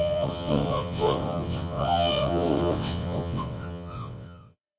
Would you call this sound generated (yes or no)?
yes